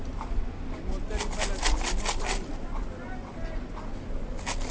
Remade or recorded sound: recorded